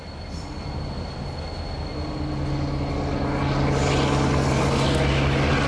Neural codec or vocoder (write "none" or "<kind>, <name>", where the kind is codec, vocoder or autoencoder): none